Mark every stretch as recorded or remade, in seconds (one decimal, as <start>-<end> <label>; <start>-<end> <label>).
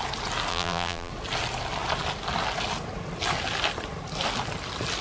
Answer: 0.0-0.5 recorded; 0.5-1.1 remade; 1.1-5.0 recorded